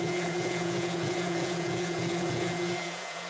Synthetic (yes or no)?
yes